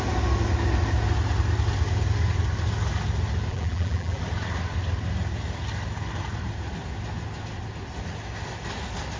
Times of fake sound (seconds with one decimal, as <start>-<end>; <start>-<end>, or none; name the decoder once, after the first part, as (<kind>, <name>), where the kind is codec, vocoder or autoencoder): 3.5-4.2 (vocoder, BigVGAN v2)